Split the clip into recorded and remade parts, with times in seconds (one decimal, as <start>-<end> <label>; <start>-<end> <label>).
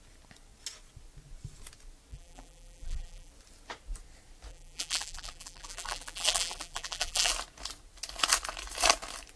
0.0-2.1 recorded; 2.1-3.3 remade; 3.3-4.5 recorded; 4.5-7.3 remade; 7.3-9.4 recorded